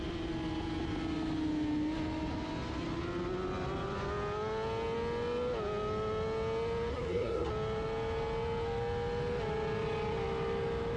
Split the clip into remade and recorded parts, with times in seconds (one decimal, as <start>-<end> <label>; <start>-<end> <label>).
0.0-6.9 recorded; 6.9-7.5 remade; 7.5-11.0 recorded